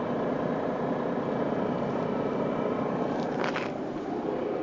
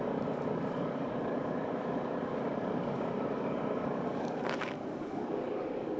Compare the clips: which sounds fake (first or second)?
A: second